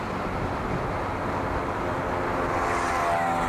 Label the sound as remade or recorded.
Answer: recorded